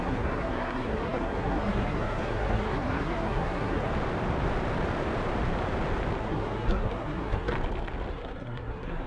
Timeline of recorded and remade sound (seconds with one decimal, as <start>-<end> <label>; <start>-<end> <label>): 0.0-3.9 remade; 3.9-6.2 recorded; 6.2-7.5 remade; 7.5-8.1 recorded; 8.1-9.1 remade